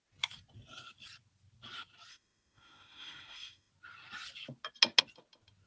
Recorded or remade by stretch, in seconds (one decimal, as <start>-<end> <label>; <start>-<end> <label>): 0.0-2.1 recorded; 2.1-3.7 remade; 3.7-5.7 recorded